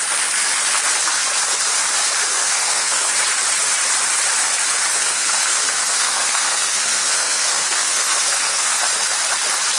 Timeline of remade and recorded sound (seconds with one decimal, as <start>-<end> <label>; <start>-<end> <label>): 0.0-2.3 recorded; 2.3-3.1 remade; 3.1-4.9 recorded; 4.9-8.8 remade; 8.8-9.8 recorded